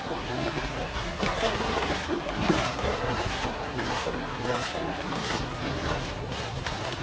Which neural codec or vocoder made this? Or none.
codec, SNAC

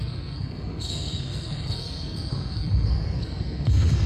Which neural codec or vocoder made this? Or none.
codec, SNAC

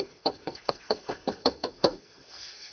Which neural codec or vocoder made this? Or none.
codec, SNAC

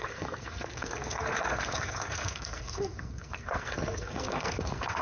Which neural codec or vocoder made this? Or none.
codec, SNAC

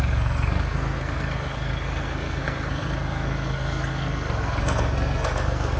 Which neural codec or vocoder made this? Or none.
codec, SNAC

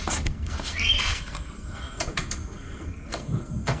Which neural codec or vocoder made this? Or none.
codec, SNAC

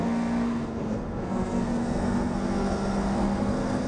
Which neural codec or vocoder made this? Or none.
codec, SNAC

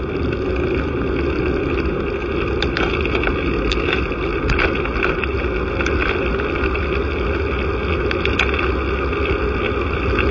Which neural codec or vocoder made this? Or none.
none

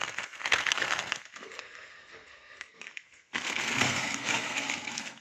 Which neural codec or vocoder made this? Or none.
codec, SNAC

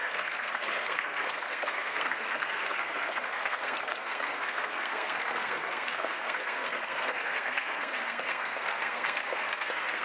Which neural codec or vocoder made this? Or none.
codec, SNAC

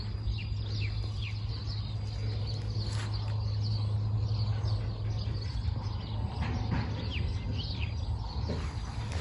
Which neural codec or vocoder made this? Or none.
none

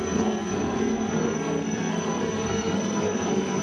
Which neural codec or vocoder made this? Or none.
codec, SNAC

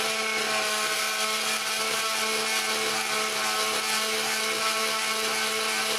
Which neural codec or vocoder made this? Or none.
none